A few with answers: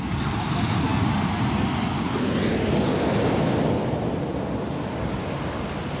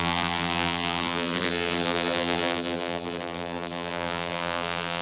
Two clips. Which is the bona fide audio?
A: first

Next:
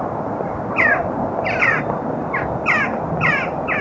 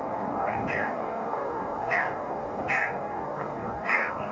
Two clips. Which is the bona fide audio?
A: first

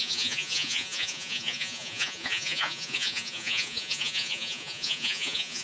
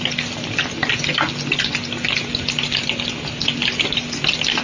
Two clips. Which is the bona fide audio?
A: second